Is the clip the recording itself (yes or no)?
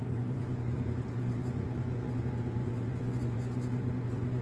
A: no